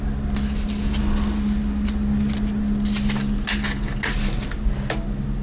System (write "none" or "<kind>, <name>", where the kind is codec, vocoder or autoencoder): none